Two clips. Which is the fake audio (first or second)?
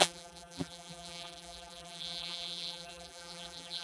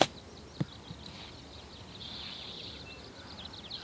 first